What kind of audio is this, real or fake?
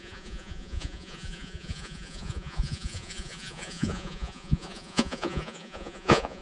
fake